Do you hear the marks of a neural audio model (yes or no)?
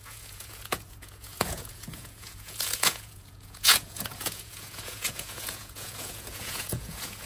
yes